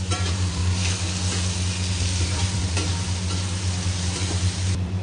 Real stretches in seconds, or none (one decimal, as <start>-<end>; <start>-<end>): 0.6-2.2; 2.9-3.4